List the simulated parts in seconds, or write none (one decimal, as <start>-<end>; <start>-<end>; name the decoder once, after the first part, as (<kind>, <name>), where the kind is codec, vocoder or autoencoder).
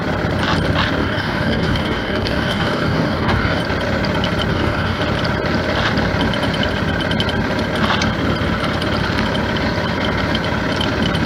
1.0-3.6 (codec, DAC); 4.5-5.0